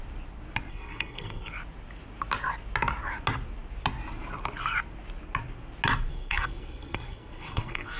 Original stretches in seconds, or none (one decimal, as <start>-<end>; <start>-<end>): 0.0-0.7; 1.5-6.1